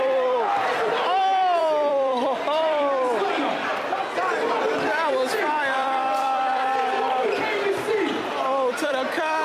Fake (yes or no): yes